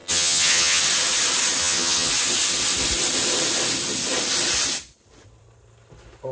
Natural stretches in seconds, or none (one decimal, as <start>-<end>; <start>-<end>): 0.8-1.6; 2.1-6.3